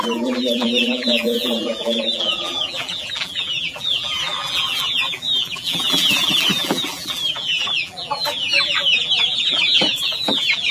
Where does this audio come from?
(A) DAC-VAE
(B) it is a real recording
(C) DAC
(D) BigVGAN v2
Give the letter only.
D